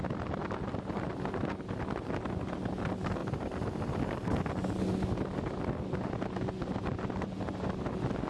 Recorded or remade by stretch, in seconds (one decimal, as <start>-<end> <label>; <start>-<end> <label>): 0.0-8.3 recorded